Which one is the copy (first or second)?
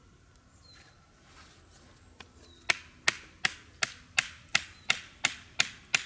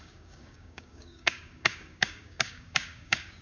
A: second